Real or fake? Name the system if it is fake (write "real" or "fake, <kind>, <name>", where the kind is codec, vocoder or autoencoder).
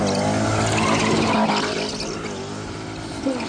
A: real